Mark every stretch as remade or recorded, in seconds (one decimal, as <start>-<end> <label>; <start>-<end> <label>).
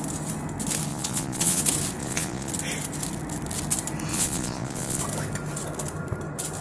0.0-0.9 recorded; 0.9-1.6 remade; 1.6-2.0 recorded; 2.0-2.5 remade; 2.5-4.1 recorded; 4.1-5.0 remade; 5.0-6.6 recorded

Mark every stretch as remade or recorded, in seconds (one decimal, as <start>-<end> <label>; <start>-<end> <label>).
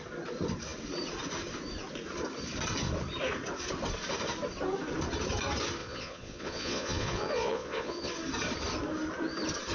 0.0-5.8 recorded; 5.8-8.1 remade; 8.1-9.7 recorded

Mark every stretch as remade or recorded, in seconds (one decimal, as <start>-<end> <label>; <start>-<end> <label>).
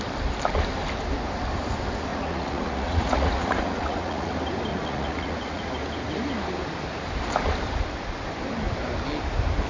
0.0-2.1 recorded; 2.1-4.3 remade; 4.3-4.7 recorded; 4.7-5.7 remade; 5.7-9.7 recorded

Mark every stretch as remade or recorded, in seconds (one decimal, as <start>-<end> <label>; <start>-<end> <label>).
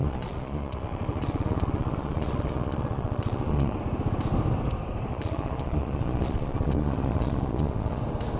0.0-3.8 remade; 3.8-5.1 recorded; 5.1-8.0 remade; 8.0-8.4 recorded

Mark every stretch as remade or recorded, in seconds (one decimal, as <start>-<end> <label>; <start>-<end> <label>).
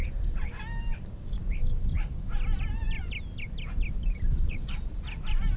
0.0-0.5 remade; 0.5-4.3 recorded; 4.3-5.0 remade; 5.0-5.6 recorded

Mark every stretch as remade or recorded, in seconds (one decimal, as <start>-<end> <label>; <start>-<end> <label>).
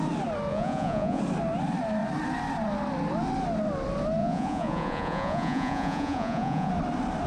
0.0-0.5 recorded; 0.5-1.2 remade; 1.2-4.2 recorded; 4.2-6.7 remade; 6.7-7.3 recorded